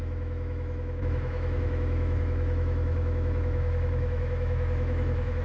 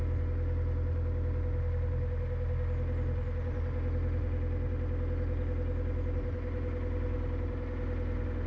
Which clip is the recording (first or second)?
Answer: second